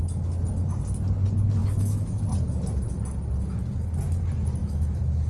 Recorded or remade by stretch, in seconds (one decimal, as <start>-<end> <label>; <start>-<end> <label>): 0.0-1.6 recorded; 1.6-2.2 remade; 2.2-4.6 recorded; 4.6-5.3 remade